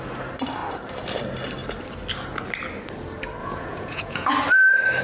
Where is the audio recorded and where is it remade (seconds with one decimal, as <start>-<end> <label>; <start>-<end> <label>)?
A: 0.0-3.4 recorded; 3.4-4.3 remade; 4.3-5.0 recorded